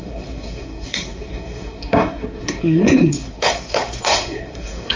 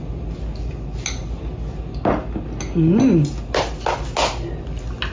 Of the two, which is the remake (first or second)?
first